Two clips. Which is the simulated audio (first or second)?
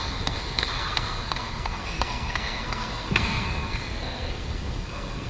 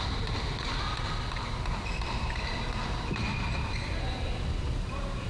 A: first